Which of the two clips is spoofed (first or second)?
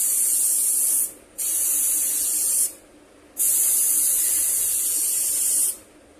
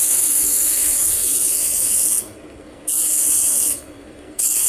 second